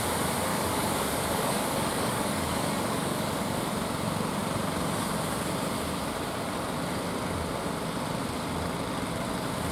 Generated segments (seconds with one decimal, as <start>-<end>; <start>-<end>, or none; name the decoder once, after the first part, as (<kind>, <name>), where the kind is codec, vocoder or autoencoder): 0.5-3.7 (codec, DAC)